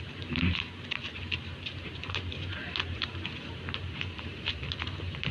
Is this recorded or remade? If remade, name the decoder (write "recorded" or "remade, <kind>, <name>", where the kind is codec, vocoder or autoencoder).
remade, vocoder, BigVGAN v2